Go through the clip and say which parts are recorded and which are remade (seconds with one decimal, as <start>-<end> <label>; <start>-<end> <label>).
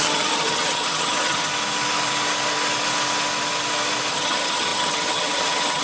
0.0-1.5 remade; 1.5-4.1 recorded; 4.1-5.8 remade